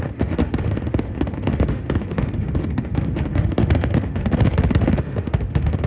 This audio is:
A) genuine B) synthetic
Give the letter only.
B